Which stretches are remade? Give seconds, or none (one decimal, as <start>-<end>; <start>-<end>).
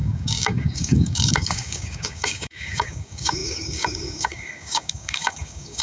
0.0-5.8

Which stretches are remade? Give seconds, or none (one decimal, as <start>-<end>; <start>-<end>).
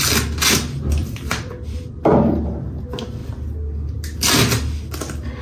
1.0-2.8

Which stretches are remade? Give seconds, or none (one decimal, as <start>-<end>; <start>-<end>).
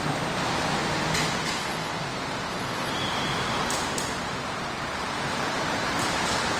2.1-6.1